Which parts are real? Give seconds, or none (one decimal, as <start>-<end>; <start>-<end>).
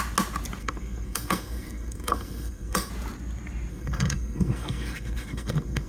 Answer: 0.0-0.6; 2.9-3.7